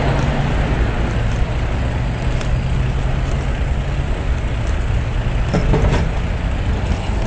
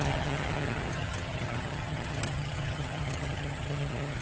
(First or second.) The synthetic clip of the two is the second